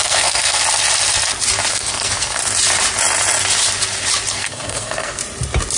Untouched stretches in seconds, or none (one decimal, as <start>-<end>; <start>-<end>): 0.6-1.7; 2.4-4.3; 5.2-5.8